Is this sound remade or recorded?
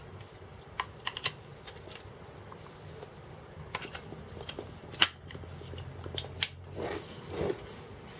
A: recorded